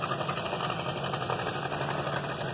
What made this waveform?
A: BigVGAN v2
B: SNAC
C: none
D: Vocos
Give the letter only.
C